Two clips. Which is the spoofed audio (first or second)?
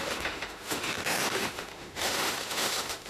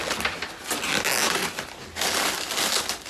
first